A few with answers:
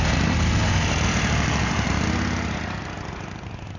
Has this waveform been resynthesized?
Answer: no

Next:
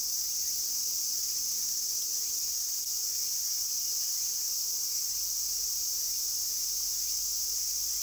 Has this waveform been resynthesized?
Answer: no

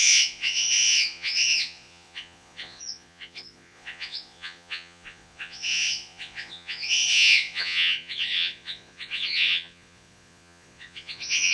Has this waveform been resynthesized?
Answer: yes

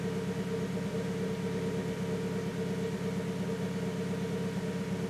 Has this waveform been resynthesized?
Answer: no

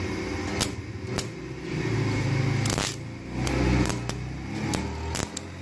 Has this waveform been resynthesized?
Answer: no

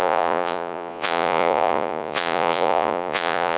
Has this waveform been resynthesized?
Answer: yes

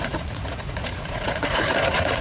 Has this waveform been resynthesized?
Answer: yes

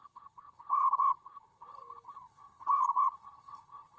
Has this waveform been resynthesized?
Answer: yes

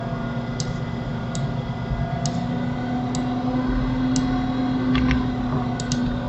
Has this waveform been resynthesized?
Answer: no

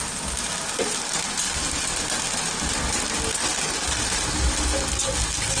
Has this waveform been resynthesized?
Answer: no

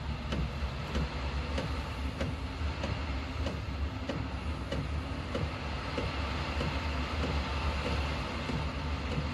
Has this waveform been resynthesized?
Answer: no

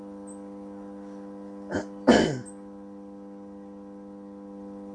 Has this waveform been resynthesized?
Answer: no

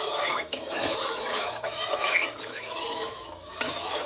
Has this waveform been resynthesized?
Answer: yes